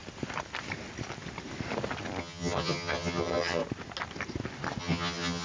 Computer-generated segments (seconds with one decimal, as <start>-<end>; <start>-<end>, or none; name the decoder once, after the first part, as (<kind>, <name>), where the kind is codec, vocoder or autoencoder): 2.2-3.6 (vocoder, HiFi-GAN); 4.8-5.4